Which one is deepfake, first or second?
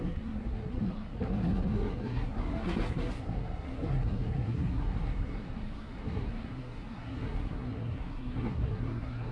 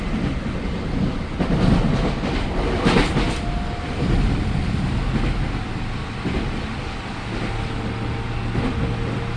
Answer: first